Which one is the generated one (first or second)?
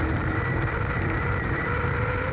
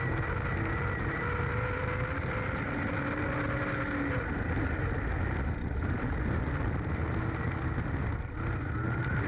first